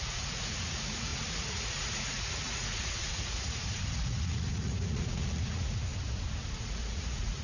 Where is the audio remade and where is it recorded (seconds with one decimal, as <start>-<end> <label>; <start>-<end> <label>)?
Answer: 0.0-5.9 remade; 5.9-6.6 recorded; 6.6-7.4 remade